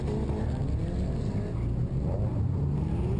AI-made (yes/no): no